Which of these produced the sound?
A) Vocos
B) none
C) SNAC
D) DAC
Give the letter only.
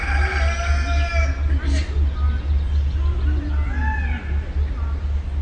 B